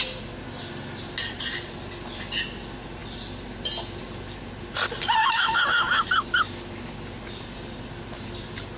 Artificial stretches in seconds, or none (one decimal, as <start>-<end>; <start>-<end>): none